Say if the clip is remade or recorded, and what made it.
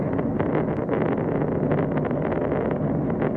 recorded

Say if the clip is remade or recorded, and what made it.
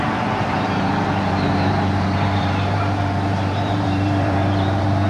remade, vocoder, BigVGAN v2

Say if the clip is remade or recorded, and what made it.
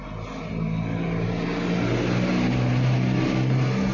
recorded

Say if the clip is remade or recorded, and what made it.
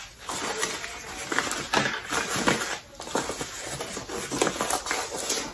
recorded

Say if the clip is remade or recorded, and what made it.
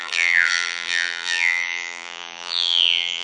remade, vocoder, BigVGAN v2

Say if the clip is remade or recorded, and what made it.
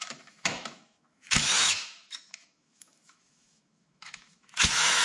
remade, autoencoder, DAC-VAE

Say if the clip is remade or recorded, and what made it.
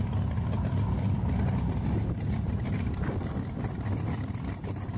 recorded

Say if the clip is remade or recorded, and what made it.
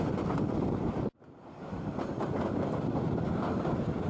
recorded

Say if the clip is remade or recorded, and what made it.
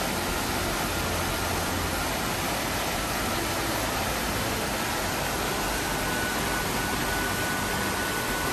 recorded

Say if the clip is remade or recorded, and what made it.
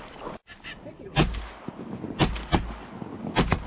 recorded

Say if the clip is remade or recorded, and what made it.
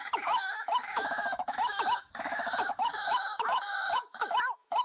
remade, autoencoder, DAC-VAE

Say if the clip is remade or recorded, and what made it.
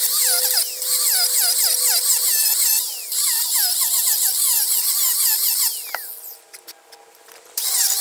recorded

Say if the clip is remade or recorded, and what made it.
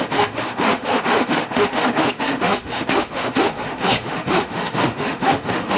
remade, autoencoder, DAC-VAE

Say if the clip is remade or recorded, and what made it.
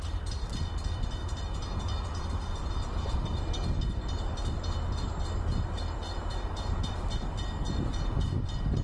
recorded